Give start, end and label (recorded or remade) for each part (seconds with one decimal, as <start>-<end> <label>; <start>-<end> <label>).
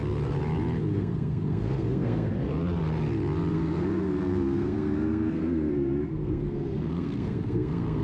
0.0-0.9 recorded; 0.9-2.3 remade; 2.3-3.5 recorded; 3.5-8.0 remade